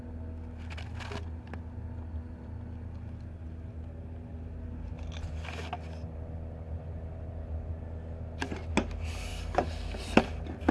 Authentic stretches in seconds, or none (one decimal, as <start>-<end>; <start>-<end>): 0.0-9.3; 10.0-10.7